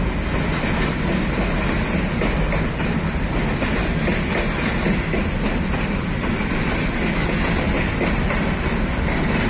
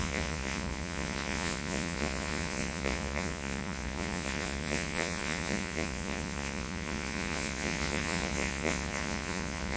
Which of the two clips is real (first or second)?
first